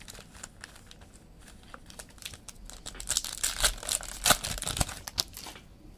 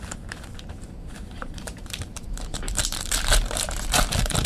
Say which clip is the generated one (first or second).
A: second